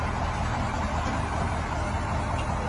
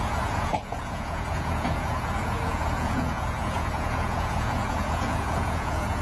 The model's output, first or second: second